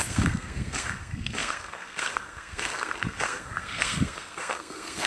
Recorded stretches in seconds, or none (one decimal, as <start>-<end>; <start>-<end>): none

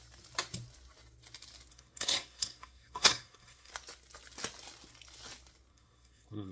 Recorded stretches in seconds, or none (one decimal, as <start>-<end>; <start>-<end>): 0.0-1.7; 3.7-5.7

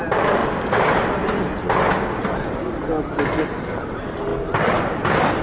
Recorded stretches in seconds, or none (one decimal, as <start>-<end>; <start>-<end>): 0.0-5.4

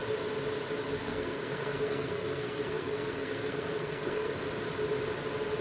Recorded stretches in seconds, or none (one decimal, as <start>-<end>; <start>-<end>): 0.0-1.0; 4.4-5.6

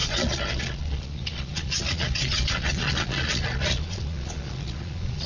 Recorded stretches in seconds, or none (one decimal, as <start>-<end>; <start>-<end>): none

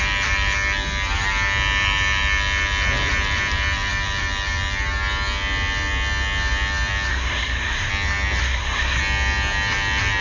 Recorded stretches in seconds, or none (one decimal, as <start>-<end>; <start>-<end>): 0.0-7.1; 7.9-8.4; 9.0-10.2

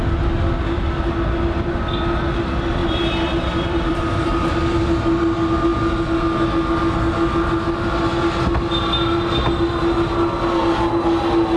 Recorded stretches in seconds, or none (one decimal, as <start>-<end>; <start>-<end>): 0.0-2.8; 4.5-11.6

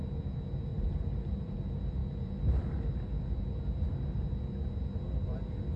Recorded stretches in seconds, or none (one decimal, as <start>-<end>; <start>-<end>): 0.0-0.7; 1.6-5.8